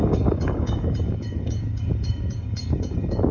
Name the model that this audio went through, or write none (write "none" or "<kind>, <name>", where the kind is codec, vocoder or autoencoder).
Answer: codec, DAC